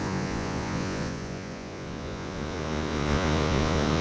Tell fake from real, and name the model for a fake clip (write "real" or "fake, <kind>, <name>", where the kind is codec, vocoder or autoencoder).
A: fake, vocoder, Vocos